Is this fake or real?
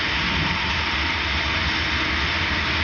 real